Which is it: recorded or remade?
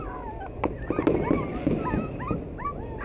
recorded